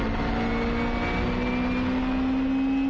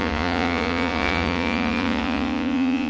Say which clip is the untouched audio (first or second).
first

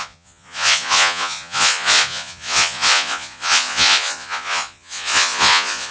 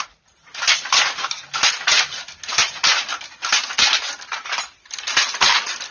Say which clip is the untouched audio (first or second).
second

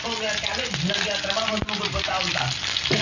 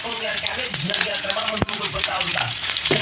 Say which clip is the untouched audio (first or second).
first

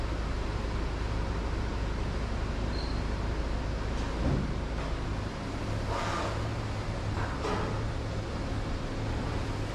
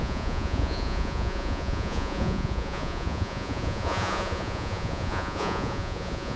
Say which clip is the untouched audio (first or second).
first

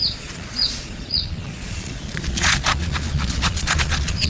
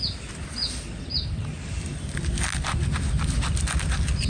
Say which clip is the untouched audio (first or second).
second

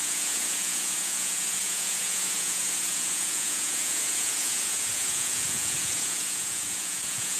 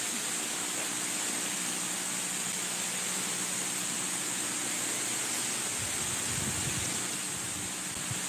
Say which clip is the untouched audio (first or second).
second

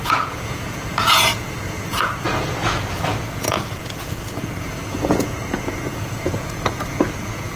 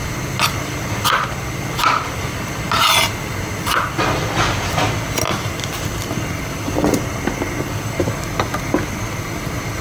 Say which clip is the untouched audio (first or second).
second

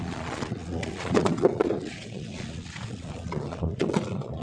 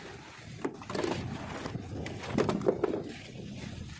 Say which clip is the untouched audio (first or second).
second